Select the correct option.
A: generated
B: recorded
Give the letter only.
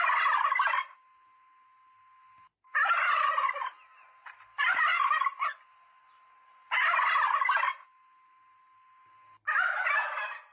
B